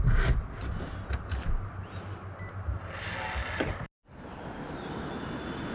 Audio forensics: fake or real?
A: real